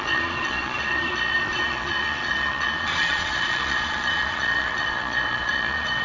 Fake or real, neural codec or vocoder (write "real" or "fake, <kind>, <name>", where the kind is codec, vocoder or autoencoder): fake, vocoder, Vocos